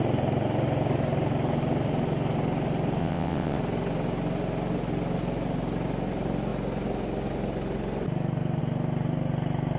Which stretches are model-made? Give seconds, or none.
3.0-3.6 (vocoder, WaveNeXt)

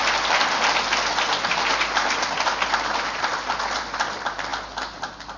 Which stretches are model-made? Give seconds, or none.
none

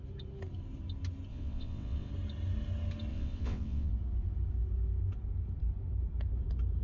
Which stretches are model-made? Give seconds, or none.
1.3-2.1 (vocoder, WaveNeXt); 3.1-3.9

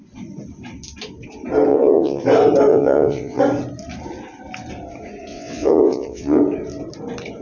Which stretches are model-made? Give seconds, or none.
1.7-2.2 (vocoder, WaveNeXt); 2.7-3.4; 5.3-6.4

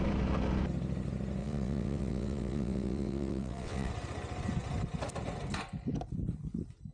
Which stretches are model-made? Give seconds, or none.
1.4-3.9 (vocoder, WaveNeXt)

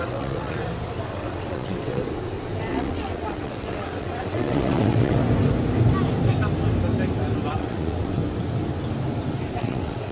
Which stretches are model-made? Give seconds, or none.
0.0-0.6 (vocoder, WaveNeXt); 1.1-2.0; 2.7-5.2; 7.5-8.2; 9.6-10.1